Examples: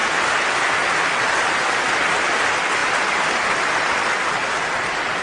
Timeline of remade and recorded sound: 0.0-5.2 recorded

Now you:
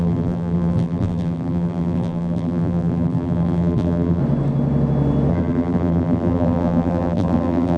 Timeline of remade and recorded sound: 0.0-4.2 remade; 4.2-5.3 recorded; 5.3-7.8 remade

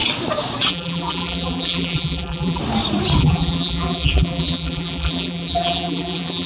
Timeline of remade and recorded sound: 0.0-0.7 recorded; 0.7-2.6 remade; 2.6-3.2 recorded; 3.2-6.5 remade

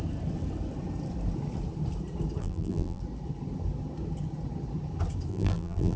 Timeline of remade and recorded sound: 0.0-2.4 recorded; 2.4-3.0 remade; 3.0-5.3 recorded; 5.3-6.0 remade

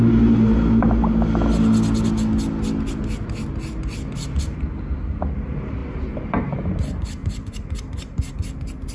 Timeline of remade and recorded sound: 0.0-7.2 recorded; 7.2-8.3 remade; 8.3-8.9 recorded

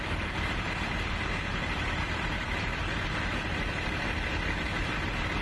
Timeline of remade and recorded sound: 0.0-4.7 remade; 4.7-5.4 recorded